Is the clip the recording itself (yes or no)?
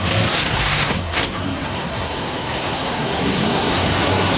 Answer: no